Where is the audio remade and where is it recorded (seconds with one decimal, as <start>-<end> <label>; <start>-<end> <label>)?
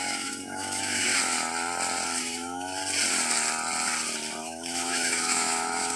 0.0-1.1 remade; 1.1-2.2 recorded; 2.2-2.8 remade; 2.8-4.4 recorded; 4.4-6.0 remade